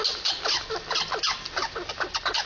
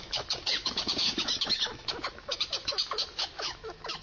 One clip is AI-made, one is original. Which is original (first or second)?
first